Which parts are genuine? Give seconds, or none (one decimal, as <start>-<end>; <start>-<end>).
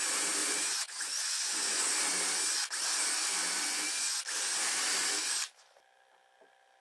0.0-0.4; 1.9-3.7; 4.2-6.8